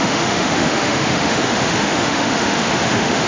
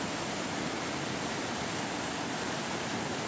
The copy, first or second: first